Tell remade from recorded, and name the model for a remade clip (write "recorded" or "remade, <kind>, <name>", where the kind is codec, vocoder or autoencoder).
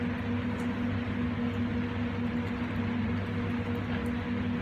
recorded